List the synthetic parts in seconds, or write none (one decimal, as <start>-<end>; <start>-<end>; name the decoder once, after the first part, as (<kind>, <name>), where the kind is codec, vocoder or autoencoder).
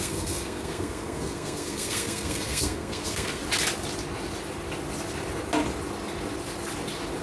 0.0-3.4 (codec, SNAC)